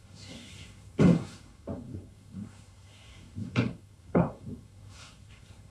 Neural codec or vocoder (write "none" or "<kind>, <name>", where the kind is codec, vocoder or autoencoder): codec, SNAC